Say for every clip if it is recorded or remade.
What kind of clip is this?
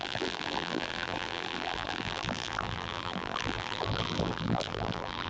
remade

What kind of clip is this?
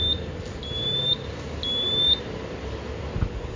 recorded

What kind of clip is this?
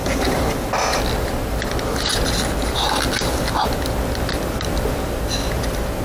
recorded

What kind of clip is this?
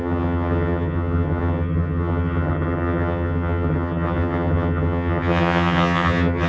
remade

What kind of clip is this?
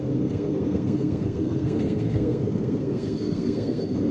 remade